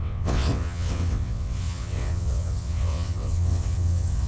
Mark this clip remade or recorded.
remade